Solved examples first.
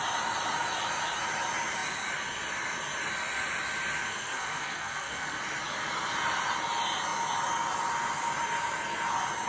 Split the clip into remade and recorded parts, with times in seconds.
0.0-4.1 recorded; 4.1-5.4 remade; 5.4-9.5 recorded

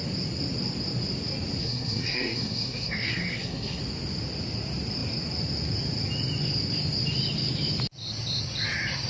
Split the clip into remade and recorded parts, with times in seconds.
0.0-1.6 recorded; 1.6-3.8 remade; 3.8-9.1 recorded